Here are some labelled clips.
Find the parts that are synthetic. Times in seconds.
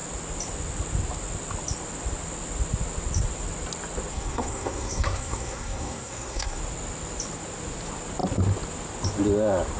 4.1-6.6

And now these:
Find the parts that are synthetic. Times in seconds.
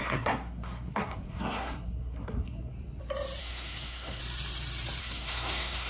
0.0-2.7; 3.4-4.2; 5.0-5.9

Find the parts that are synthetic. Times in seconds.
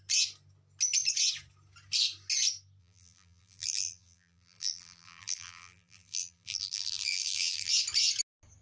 2.8-7.7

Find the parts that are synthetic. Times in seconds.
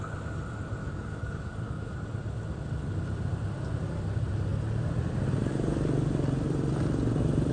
0.8-1.9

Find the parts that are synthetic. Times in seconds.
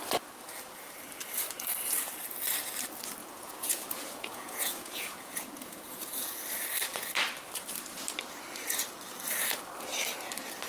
3.2-6.4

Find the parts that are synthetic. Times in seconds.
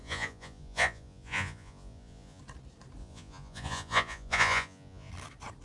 0.0-2.4; 3.0-5.1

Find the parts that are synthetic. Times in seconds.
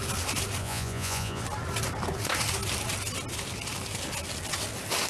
0.6-1.4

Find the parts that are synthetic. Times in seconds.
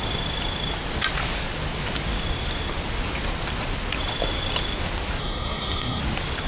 5.2-6.0